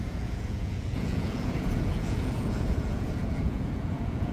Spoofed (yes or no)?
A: yes